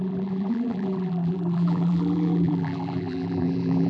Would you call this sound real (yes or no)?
no